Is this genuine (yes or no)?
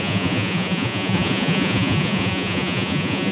no